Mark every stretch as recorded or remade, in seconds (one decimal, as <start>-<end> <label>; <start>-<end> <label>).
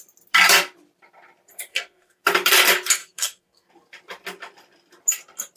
0.0-1.7 recorded; 1.7-2.2 remade; 2.2-3.0 recorded; 3.0-3.7 remade; 3.7-5.6 recorded